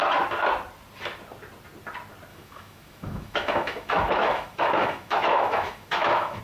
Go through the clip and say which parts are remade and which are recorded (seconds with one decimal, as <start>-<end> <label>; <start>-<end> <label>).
0.0-2.3 recorded; 2.3-6.4 remade